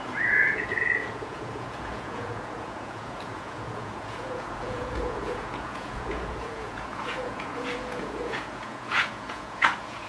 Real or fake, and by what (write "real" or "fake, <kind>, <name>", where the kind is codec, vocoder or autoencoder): fake, vocoder, Vocos